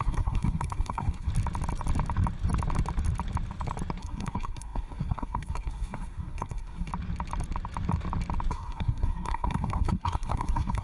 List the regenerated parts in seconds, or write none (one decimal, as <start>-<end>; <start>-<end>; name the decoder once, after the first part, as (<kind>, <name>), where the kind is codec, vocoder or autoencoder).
0.0-1.3 (codec, SNAC); 4.0-6.9; 8.5-10.8